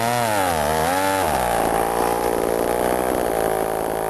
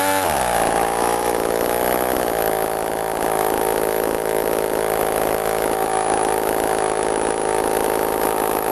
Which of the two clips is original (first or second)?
first